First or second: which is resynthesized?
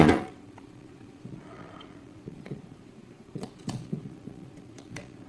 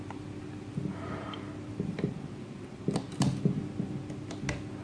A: first